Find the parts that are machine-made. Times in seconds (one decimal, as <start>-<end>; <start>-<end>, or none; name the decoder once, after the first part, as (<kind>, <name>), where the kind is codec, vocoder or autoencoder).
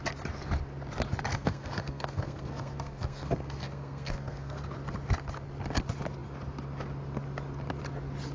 1.3-4.6 (codec, SNAC)